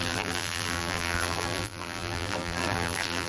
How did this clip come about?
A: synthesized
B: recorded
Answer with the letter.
A